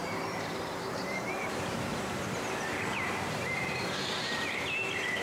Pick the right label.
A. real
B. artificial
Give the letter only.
B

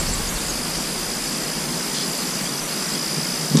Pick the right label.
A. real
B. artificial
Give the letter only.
A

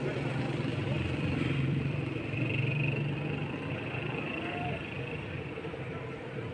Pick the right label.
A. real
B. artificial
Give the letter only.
B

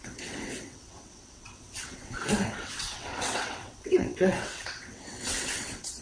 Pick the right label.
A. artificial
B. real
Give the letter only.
A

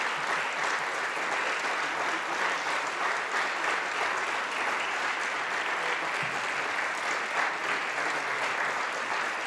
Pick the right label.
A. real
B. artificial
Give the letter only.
A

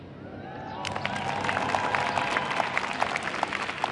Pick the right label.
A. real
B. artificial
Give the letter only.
A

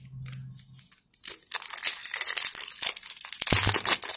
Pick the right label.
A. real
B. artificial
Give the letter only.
A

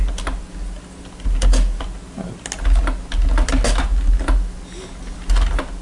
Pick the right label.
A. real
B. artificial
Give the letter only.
A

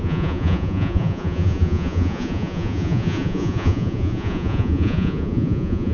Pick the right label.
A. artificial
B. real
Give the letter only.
A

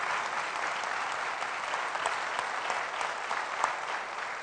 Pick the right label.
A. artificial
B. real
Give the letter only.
B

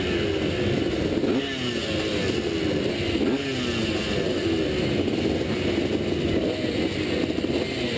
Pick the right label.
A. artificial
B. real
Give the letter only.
B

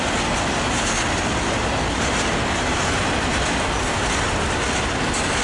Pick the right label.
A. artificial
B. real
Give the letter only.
B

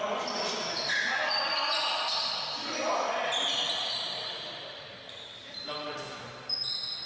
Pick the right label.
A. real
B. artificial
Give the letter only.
A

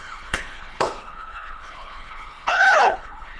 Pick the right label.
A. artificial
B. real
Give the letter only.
A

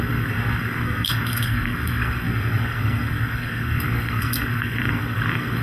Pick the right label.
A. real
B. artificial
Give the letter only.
B